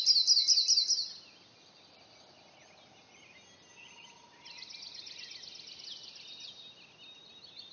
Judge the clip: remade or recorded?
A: recorded